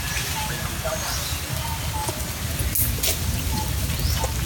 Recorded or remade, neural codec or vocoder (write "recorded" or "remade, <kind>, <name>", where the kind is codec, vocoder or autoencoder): recorded